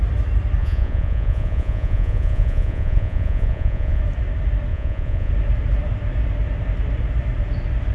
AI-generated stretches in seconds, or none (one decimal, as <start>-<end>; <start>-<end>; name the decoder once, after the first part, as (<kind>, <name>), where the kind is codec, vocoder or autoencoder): 0.6-4.0 (vocoder, Vocos); 4.7-5.3